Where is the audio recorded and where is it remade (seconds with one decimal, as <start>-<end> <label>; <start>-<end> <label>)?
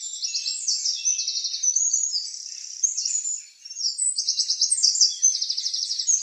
0.0-6.2 recorded